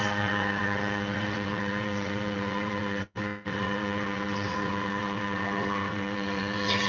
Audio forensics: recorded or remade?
remade